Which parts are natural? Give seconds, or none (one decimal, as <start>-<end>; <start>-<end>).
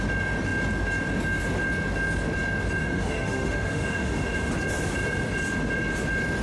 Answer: 0.0-2.8; 4.5-6.4